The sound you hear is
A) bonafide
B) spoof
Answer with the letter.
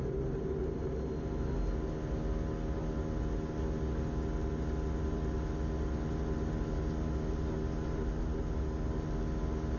A